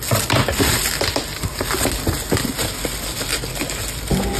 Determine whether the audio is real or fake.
real